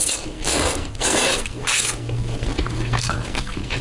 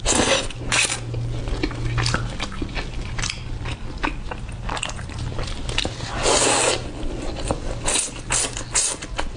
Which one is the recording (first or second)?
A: second